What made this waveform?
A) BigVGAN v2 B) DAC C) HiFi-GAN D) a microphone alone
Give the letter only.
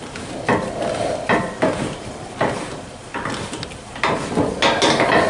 D